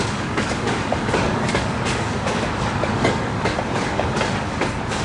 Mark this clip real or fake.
fake